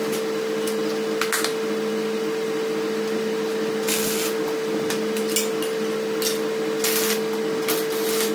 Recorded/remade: recorded